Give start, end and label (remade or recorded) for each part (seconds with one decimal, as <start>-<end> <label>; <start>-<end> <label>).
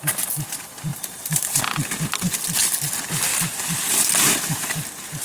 0.0-0.9 recorded; 0.9-1.6 remade; 1.6-5.2 recorded